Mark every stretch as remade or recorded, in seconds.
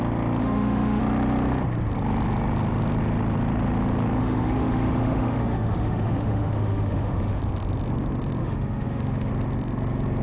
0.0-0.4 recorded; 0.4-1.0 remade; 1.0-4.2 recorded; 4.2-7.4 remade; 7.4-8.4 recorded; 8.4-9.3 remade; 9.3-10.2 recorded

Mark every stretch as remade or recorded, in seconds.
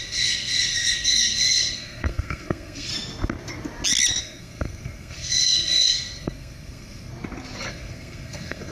0.0-2.9 remade; 2.9-4.2 recorded; 4.2-7.1 remade; 7.1-7.7 recorded; 7.7-8.7 remade